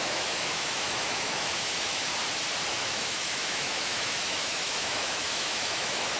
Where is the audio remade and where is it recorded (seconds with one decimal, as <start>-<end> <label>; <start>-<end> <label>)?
0.0-2.1 remade; 2.1-2.7 recorded; 2.7-6.2 remade